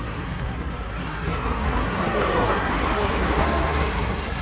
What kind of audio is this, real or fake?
fake